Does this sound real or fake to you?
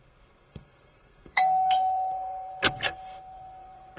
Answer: fake